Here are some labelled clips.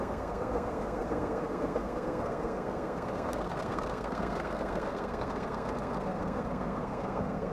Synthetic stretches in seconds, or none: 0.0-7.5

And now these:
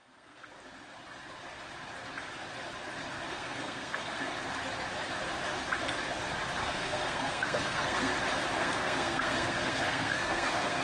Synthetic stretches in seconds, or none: 0.0-0.4; 3.3-4.3; 6.6-8.1; 8.6-10.8

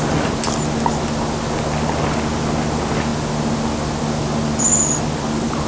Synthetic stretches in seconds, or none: none

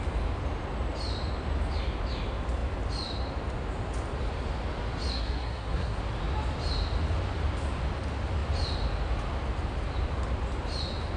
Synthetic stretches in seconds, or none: 5.1-6.0

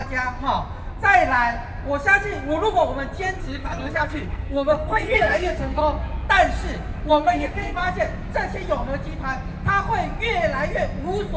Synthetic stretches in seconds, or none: 3.4-5.8; 7.1-7.8